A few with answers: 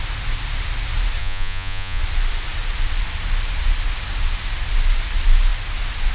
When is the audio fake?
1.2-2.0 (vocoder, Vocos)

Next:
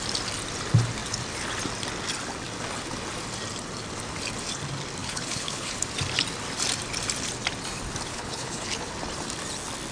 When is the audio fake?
5.0-5.8 (codec, HILCodec); 8.1-8.9

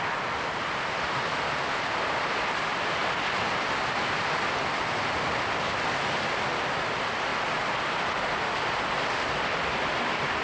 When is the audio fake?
none

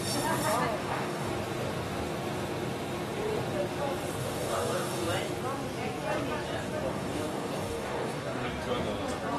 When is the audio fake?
0.8-1.3 (codec, DAC); 4.2-5.1; 6.9-8.5

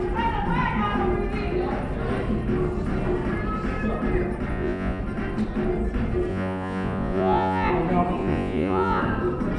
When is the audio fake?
4.5-5.0 (vocoder, Vocos); 6.3-7.7; 8.2-9.0

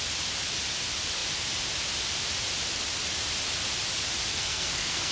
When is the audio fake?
4.3-5.1 (codec, SNAC)